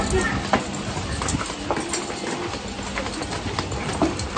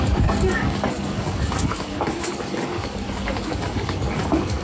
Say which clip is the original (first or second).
first